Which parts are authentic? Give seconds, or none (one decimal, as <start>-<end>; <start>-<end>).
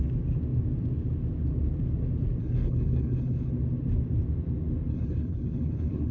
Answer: 0.0-2.4; 3.5-4.9